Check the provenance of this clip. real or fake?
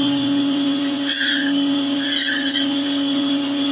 fake